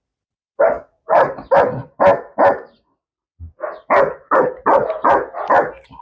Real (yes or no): yes